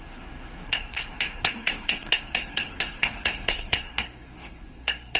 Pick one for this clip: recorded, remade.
remade